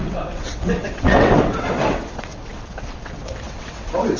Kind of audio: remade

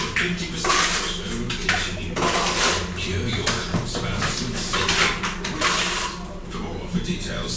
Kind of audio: recorded